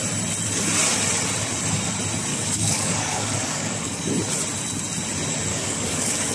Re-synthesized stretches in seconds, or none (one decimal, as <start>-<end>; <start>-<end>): 2.3-4.1; 5.5-6.3